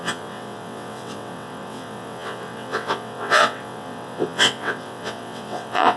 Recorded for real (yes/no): no